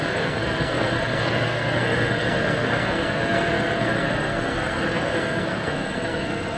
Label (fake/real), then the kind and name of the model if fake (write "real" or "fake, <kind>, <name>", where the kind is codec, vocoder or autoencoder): fake, codec, SNAC